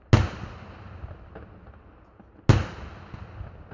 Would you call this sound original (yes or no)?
yes